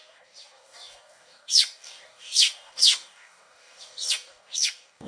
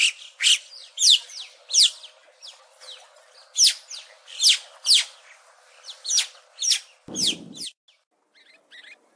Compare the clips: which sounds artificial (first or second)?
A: first